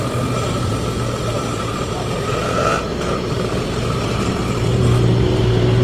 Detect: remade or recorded remade